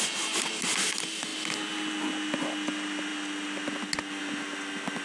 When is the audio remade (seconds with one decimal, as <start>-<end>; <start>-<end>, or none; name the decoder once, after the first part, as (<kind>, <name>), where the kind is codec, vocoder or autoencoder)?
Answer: none